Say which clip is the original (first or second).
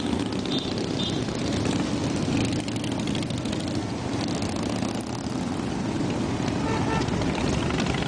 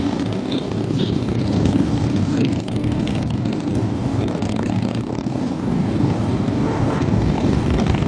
first